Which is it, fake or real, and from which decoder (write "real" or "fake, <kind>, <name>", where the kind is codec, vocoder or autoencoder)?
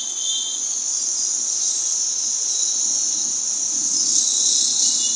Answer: real